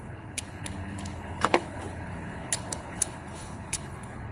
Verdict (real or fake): fake